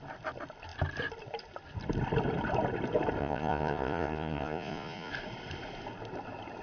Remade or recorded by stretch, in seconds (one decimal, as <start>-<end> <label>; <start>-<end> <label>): 0.0-3.2 recorded; 3.2-5.1 remade; 5.1-6.6 recorded